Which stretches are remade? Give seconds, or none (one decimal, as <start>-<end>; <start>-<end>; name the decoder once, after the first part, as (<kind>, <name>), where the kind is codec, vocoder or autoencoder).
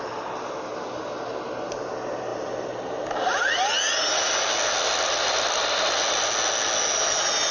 none